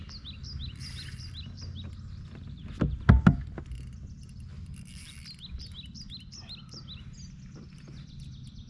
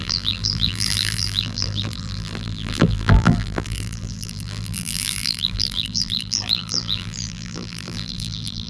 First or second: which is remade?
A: second